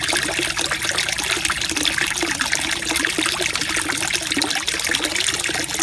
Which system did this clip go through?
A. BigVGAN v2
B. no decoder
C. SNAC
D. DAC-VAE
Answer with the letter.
B